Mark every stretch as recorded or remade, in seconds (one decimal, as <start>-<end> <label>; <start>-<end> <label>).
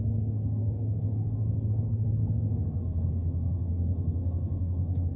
0.0-5.2 remade